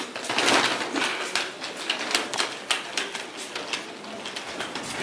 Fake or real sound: real